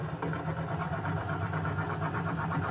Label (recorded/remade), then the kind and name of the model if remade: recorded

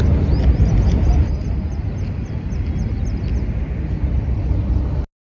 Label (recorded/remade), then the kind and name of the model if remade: recorded